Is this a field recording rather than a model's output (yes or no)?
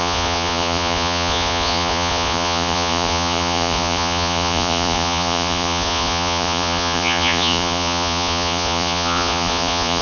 no